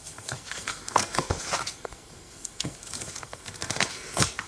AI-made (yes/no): yes